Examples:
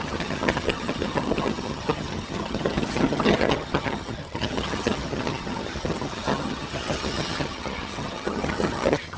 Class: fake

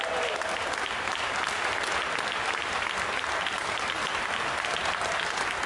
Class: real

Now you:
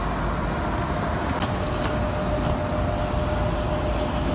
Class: real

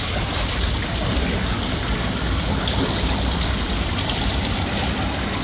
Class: real